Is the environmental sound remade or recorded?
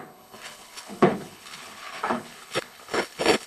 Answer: remade